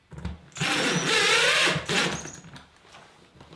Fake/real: real